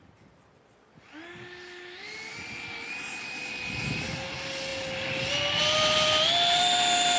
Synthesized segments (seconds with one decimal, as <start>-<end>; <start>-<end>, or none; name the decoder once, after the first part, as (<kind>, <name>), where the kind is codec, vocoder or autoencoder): 6.6-7.2 (autoencoder, DAC-VAE)

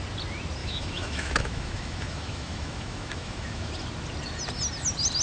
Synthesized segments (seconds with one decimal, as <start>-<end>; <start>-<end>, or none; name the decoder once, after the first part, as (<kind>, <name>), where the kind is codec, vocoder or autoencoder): 0.6-3.7 (autoencoder, DAC-VAE)

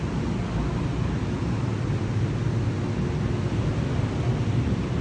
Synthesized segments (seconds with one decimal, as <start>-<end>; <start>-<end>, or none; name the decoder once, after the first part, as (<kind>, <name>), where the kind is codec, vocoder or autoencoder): none

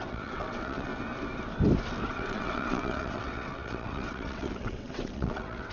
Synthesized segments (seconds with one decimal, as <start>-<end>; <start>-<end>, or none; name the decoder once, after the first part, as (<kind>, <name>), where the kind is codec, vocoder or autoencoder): 0.0-0.9 (vocoder, WaveNeXt); 2.1-5.7